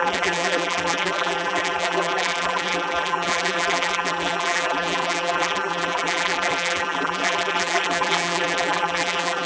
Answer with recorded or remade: remade